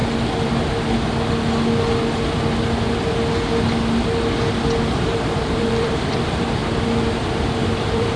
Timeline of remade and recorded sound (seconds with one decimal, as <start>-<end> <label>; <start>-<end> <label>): 0.0-4.9 recorded; 4.9-6.6 remade; 6.6-7.6 recorded; 7.6-8.2 remade